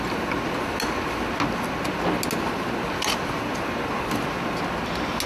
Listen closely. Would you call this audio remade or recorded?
recorded